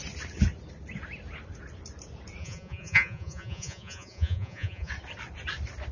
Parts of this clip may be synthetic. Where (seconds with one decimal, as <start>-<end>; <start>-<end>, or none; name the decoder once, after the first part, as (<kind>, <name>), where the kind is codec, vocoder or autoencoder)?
2.4-4.9 (vocoder, Vocos)